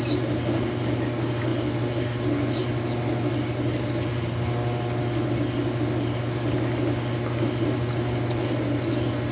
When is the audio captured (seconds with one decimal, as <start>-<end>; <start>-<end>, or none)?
0.0-9.3